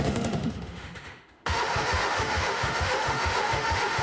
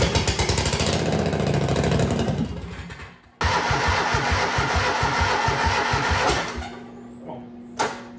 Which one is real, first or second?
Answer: second